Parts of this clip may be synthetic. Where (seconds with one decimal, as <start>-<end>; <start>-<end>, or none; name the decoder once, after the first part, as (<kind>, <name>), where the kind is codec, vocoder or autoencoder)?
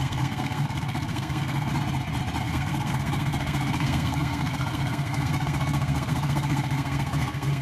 0.0-1.7 (codec, SNAC); 2.4-7.6